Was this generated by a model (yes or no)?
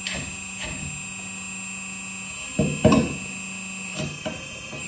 no